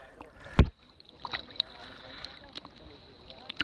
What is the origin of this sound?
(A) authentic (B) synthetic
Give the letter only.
A